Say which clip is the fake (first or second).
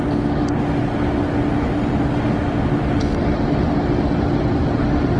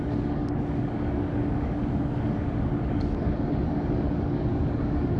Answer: second